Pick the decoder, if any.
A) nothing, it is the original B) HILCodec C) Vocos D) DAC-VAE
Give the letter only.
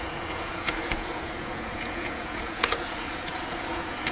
C